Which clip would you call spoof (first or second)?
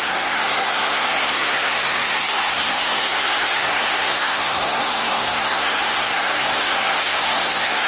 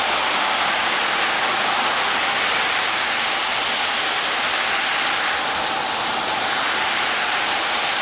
first